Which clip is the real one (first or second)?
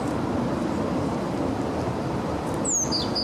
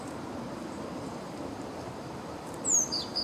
first